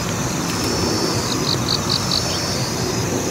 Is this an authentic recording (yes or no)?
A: no